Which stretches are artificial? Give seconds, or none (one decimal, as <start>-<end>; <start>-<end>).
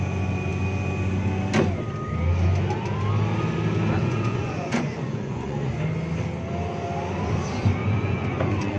4.0-5.7; 7.8-8.8